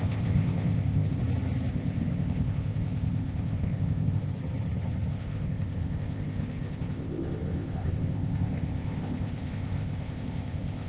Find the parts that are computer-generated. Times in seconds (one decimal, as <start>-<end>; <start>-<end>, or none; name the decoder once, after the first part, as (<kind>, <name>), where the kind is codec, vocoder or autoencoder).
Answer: 0.0-1.2 (codec, ZipCodec); 1.7-4.3; 5.1-10.9